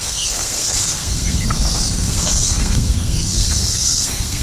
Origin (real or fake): fake